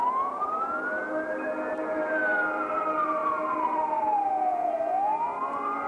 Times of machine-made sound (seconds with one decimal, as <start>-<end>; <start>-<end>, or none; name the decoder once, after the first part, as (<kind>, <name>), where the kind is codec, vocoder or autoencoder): 3.2-4.2 (vocoder, BigVGAN v2)